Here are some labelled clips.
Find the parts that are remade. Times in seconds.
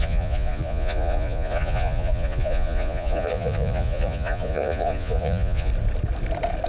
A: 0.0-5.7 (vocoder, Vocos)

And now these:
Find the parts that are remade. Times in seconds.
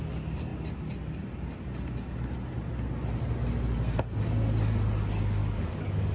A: 5.4-6.1 (codec, DAC)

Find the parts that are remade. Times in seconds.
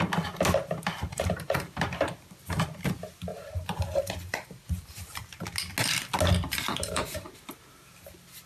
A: 1.1-1.8 (vocoder, BigVGAN v2); 3.3-5.2; 6.7-7.3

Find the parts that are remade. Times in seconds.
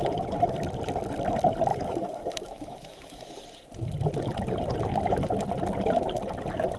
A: 1.7-3.3 (autoencoder, DAC-VAE)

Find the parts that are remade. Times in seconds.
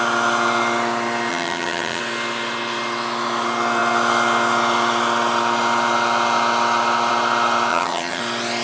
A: 1.3-2.0 (vocoder, HiFi-GAN); 7.7-8.2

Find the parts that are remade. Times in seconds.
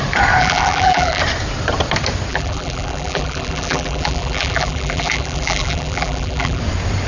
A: 0.4-1.2 (vocoder, BigVGAN v2); 2.3-6.6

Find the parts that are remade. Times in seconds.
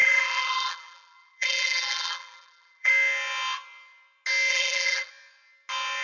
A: 0.0-2.9 (vocoder, BigVGAN v2); 4.5-5.1